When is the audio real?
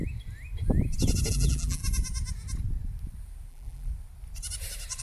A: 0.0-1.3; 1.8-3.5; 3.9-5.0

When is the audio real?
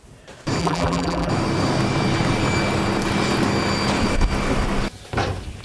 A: 0.0-0.6; 1.3-5.6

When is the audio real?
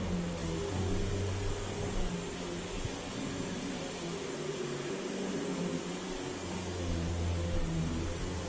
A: 0.0-8.5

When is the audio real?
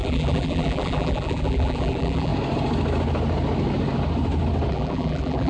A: 2.3-4.7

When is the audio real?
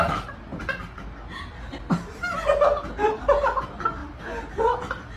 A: 0.0-5.2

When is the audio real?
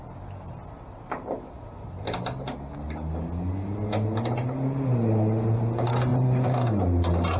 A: 0.0-6.1; 6.7-7.4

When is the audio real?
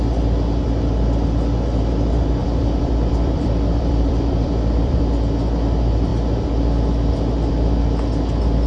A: 0.0-2.4; 5.0-8.7